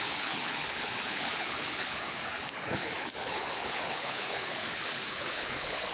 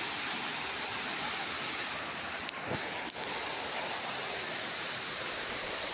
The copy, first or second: first